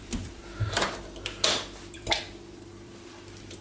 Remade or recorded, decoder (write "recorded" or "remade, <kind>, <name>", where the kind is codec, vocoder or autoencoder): remade, vocoder, BigVGAN v2